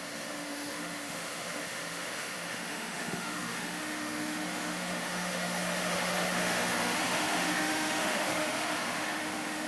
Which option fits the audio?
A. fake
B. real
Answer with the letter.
A